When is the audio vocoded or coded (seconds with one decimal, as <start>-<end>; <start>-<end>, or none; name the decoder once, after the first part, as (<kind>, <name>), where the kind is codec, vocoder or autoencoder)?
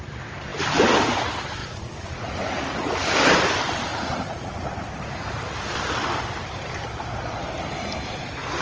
1.6-3.1 (vocoder, Vocos); 3.9-4.7